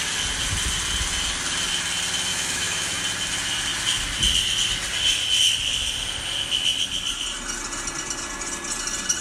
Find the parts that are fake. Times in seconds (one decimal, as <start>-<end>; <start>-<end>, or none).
2.3-3.0